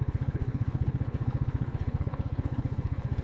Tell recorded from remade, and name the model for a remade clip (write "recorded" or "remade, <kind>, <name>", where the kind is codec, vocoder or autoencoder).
remade, codec, HILCodec